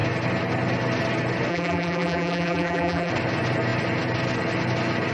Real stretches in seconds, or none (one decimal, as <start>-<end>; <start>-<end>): 0.0-1.5; 3.1-5.1